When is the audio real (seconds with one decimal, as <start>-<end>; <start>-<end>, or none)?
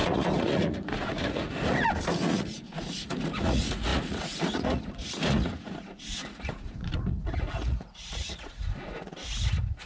none